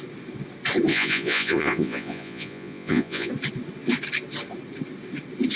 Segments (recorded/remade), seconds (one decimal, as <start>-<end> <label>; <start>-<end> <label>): 0.0-0.9 recorded; 0.9-3.3 remade; 3.3-5.6 recorded